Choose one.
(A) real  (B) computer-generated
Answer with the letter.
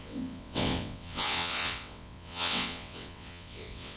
B